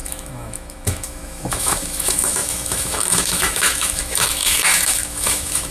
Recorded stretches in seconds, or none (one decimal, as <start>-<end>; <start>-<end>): none